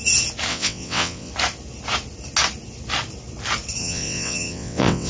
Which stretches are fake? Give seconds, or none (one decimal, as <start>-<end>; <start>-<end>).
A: 0.5-1.3; 3.8-5.1